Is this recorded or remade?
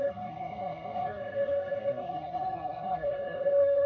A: remade